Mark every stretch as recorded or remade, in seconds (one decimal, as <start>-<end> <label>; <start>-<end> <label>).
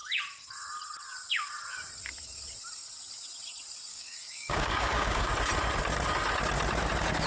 0.0-3.9 recorded; 3.9-5.3 remade; 5.3-7.3 recorded